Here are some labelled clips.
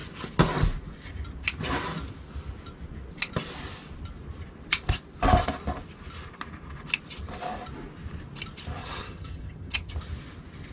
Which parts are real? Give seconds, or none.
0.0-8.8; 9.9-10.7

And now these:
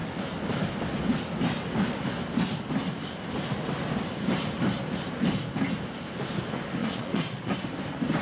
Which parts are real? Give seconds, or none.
0.0-6.8; 7.5-8.2

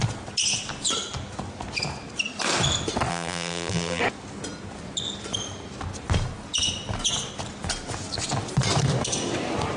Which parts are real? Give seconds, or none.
0.0-3.1; 4.0-9.8

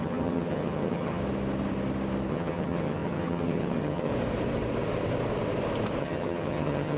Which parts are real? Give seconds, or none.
1.2-2.3; 4.1-6.0

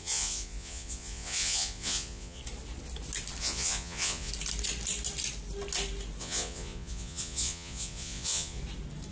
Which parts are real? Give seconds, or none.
2.4-3.4; 4.3-6.2; 8.6-9.1

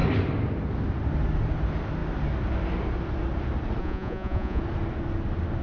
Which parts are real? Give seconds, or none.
0.0-3.8; 4.6-5.6

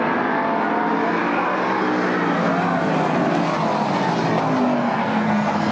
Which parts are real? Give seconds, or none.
0.0-4.8